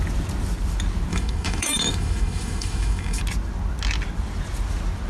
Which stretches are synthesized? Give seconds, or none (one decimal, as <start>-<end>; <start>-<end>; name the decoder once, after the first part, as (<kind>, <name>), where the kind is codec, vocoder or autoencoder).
1.1-3.2 (autoencoder, DAC-VAE)